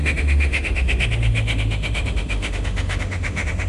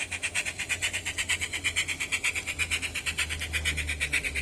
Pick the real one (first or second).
second